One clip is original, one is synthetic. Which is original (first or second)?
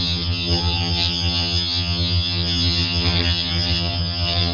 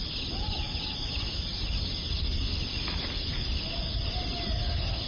second